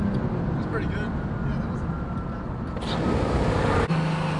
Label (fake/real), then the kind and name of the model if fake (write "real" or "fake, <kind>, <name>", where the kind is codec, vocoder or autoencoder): real